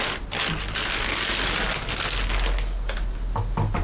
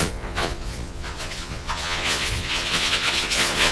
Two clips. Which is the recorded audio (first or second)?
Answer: first